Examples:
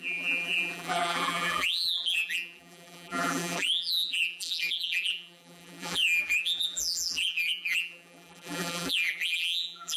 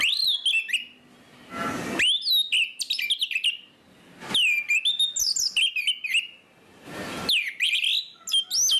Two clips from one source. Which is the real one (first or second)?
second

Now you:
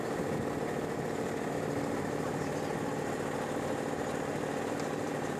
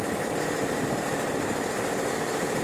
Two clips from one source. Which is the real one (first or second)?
first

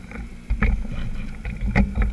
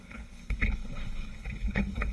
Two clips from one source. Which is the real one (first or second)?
first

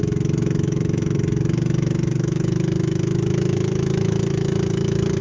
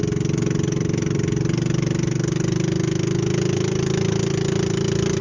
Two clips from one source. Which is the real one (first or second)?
second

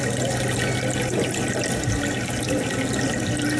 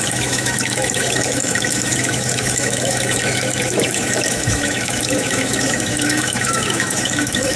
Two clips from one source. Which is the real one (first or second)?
first